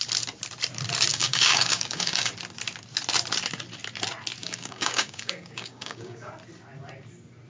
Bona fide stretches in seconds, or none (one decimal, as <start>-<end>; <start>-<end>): 0.0-1.1; 2.3-4.4; 6.3-7.5